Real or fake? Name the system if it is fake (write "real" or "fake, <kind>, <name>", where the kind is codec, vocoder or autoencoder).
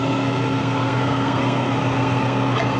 fake, codec, SNAC